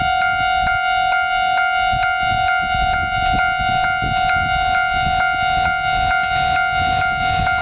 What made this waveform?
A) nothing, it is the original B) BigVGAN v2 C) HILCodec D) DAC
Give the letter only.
A